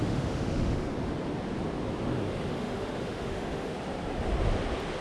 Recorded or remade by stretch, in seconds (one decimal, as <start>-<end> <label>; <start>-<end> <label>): 0.0-0.9 remade; 0.9-2.5 recorded; 2.5-3.7 remade; 3.7-5.0 recorded